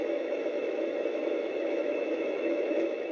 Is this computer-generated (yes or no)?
yes